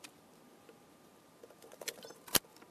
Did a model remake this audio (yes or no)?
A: no